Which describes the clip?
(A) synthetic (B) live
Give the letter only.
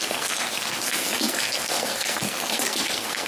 A